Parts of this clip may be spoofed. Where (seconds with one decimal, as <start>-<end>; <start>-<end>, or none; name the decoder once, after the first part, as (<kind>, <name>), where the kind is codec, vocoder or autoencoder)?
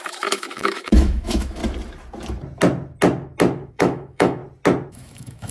0.0-1.6 (autoencoder, DAC-VAE); 3.7-4.4; 4.9-5.5